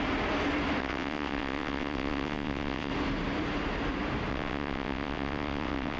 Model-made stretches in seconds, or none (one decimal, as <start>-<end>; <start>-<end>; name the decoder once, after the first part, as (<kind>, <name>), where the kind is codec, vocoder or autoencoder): 0.8-2.9 (vocoder, WaveNeXt); 4.3-6.0